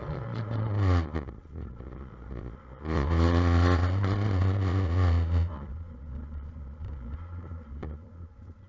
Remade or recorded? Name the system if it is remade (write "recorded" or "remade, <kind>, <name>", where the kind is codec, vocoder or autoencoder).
remade, vocoder, Vocos